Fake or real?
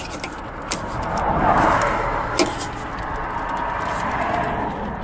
real